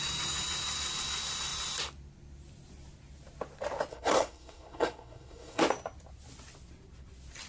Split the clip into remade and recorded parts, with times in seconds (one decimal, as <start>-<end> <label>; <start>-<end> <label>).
0.0-3.9 recorded; 3.9-5.6 remade; 5.6-7.5 recorded